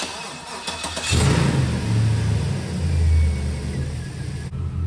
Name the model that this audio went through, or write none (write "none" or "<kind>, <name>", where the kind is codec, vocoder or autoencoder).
none